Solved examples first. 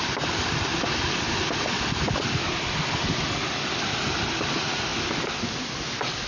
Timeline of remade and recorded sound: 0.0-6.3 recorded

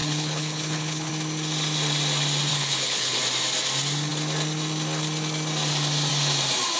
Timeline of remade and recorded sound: 0.0-1.1 remade; 1.1-2.5 recorded; 2.5-3.2 remade; 3.2-6.8 recorded

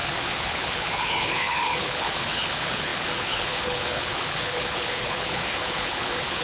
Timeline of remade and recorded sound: 0.0-6.4 remade

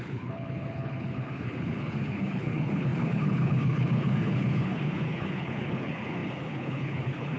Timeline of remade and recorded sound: 0.0-7.4 remade

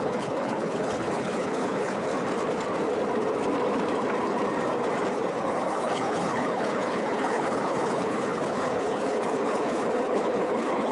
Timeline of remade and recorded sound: 0.0-2.1 remade; 2.1-5.3 recorded; 5.3-10.9 remade